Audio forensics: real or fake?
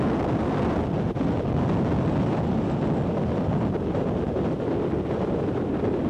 real